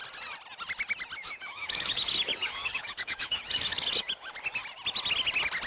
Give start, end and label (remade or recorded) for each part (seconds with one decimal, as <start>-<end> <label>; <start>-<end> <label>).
0.0-1.2 recorded; 1.2-4.3 remade; 4.3-5.7 recorded